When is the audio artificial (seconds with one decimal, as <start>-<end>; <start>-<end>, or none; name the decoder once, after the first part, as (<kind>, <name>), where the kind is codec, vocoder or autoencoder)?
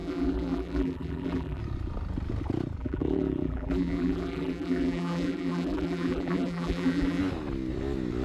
0.0-1.6 (vocoder, BigVGAN v2); 2.8-7.2